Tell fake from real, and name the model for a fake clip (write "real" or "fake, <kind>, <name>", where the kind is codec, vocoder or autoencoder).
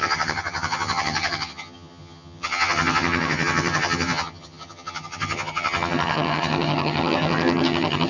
fake, vocoder, HiFi-GAN